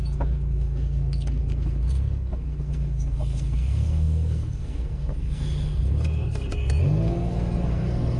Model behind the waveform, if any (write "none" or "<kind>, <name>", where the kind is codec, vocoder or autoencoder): codec, SNAC